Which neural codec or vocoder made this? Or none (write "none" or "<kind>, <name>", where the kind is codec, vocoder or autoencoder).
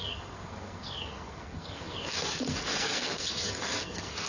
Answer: codec, SNAC